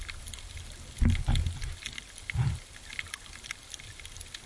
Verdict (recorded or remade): recorded